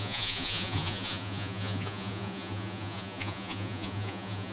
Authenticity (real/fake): fake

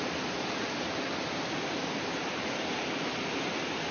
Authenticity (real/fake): real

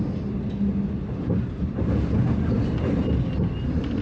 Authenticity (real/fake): real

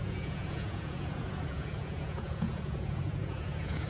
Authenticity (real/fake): fake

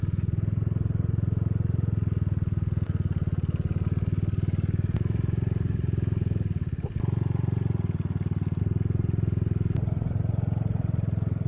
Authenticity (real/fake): real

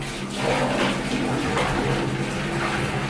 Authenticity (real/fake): real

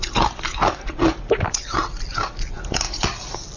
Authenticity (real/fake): real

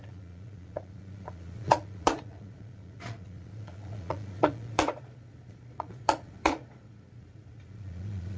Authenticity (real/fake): fake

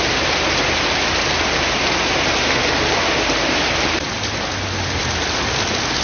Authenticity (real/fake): real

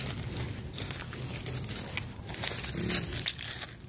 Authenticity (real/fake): real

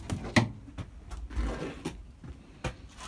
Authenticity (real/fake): real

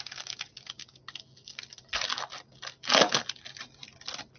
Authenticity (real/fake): real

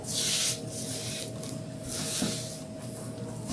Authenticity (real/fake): real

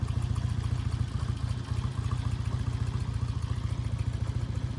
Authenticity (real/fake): real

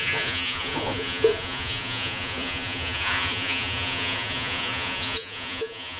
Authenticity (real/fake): fake